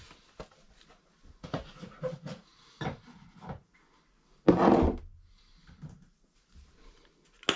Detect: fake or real real